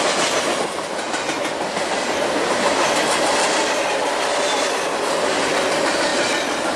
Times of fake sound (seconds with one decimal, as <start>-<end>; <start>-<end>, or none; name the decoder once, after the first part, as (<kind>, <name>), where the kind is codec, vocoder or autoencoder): none